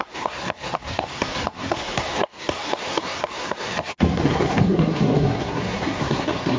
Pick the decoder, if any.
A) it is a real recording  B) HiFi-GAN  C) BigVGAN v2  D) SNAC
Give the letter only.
D